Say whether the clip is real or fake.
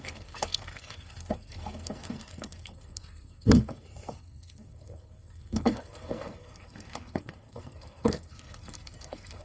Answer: fake